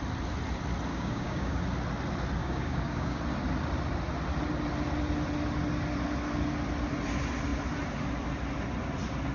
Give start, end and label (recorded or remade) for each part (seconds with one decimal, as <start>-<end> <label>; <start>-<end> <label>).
0.0-0.9 recorded; 0.9-1.6 remade; 1.6-2.4 recorded; 2.4-3.2 remade; 3.2-9.3 recorded